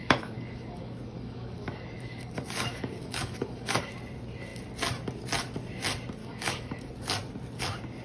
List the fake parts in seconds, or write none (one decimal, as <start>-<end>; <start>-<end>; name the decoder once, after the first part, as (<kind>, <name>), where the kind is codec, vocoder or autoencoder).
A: 0.0-3.9 (codec, DAC); 6.2-6.9